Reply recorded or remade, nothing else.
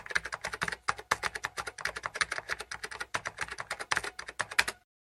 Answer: recorded